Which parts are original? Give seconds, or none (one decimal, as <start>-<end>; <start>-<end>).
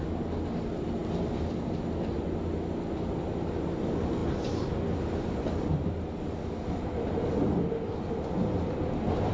0.0-9.3